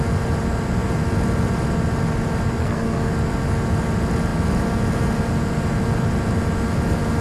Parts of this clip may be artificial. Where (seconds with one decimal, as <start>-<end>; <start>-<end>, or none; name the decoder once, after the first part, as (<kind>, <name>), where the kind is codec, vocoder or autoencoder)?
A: 2.6-3.1 (codec, SNAC)